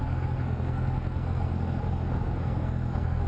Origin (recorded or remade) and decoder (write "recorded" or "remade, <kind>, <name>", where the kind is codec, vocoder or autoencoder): remade, codec, SNAC